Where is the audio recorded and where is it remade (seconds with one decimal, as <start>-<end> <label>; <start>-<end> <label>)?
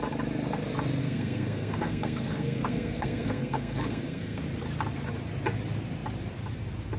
0.0-1.0 recorded; 1.0-4.4 remade; 4.4-7.0 recorded